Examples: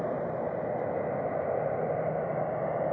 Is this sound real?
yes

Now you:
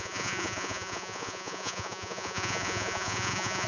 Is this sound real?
no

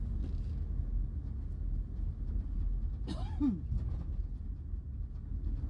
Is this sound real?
yes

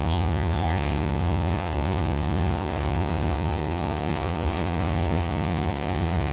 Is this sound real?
no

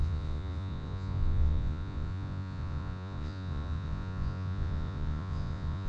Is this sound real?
no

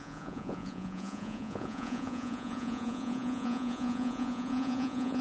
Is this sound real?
no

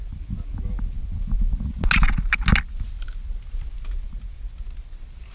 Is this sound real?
yes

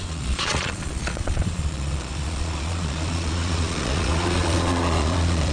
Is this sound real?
no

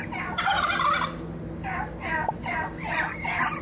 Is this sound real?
yes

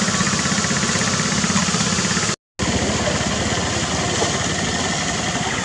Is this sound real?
yes